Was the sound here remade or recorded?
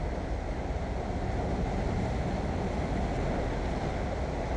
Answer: recorded